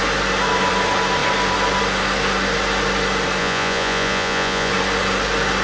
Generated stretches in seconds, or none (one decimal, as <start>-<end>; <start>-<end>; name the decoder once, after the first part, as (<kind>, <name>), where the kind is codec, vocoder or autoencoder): 3.4-4.7 (vocoder, Vocos)